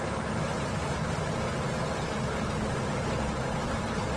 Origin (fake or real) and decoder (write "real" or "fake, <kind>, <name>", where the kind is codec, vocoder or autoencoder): real